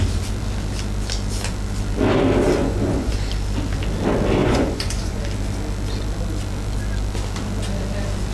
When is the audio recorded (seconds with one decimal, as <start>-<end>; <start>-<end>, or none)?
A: 0.0-2.6; 3.1-4.4; 5.2-8.3